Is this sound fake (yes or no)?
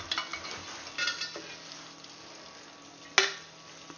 no